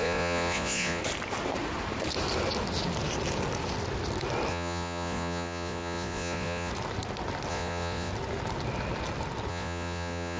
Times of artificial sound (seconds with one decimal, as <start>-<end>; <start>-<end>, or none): 0.0-1.0; 4.5-6.7; 7.5-8.1; 9.5-10.4